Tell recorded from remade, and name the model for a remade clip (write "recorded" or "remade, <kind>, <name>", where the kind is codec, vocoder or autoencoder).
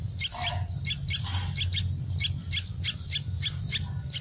recorded